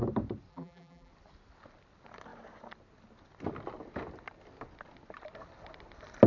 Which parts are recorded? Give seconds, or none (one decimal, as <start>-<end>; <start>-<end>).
0.0-0.5; 1.1-6.3